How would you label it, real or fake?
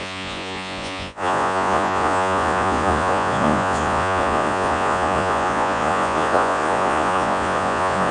fake